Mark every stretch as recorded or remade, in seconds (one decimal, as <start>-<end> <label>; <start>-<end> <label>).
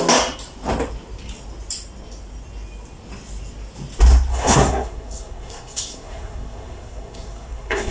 0.0-4.3 recorded; 4.3-7.9 remade